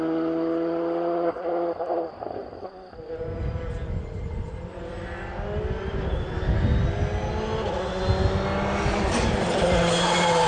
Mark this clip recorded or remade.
recorded